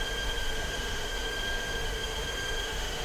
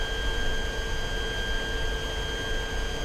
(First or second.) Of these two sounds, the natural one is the second